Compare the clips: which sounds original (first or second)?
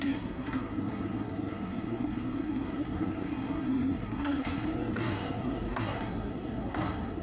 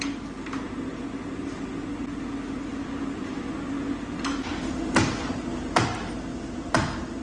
second